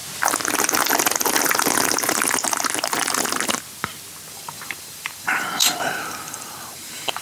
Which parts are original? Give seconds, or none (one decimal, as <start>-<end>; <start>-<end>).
0.0-4.3